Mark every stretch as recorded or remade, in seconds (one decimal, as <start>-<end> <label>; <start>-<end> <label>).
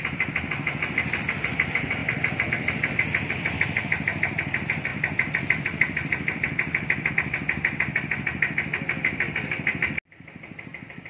0.0-11.1 recorded